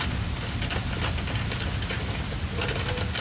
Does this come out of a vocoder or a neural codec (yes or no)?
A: no